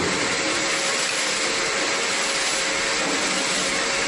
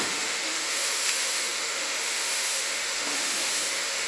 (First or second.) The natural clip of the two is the first